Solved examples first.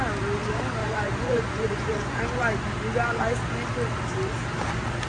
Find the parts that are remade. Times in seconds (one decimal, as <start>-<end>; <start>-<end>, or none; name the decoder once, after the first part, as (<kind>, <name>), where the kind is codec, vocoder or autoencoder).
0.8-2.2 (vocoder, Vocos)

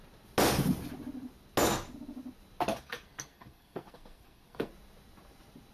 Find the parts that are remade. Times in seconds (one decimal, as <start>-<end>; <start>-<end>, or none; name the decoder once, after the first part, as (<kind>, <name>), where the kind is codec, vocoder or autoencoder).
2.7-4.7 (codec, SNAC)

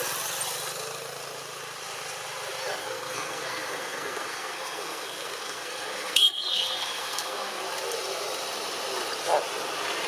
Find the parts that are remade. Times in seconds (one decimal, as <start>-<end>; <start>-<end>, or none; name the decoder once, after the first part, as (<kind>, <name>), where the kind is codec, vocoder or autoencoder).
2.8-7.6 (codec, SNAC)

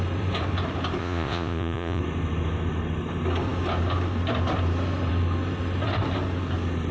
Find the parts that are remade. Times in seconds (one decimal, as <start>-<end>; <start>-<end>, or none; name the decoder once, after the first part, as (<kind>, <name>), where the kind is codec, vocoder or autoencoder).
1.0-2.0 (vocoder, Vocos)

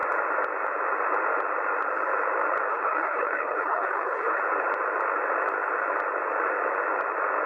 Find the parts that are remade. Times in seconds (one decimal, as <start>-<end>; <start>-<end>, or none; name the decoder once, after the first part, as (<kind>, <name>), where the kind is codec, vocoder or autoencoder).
2.7-4.4 (codec, HILCodec)